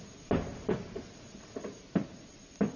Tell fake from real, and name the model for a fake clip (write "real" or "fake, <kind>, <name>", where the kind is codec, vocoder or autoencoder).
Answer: real